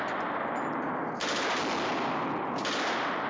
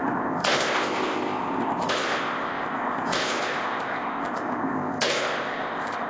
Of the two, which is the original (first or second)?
first